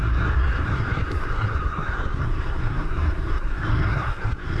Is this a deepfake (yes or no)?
yes